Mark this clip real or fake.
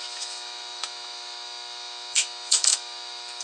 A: fake